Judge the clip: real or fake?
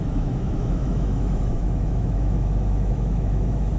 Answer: fake